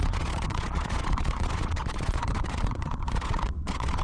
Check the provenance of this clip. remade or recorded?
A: remade